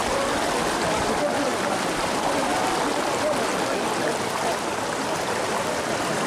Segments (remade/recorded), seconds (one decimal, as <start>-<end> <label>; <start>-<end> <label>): 0.0-0.6 recorded; 0.6-6.3 remade